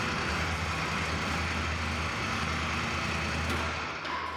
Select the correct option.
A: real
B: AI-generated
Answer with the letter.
A